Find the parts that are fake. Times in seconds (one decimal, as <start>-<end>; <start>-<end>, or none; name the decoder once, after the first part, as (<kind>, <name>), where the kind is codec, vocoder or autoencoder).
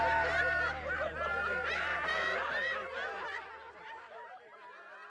0.0-5.1 (vocoder, BigVGAN v2)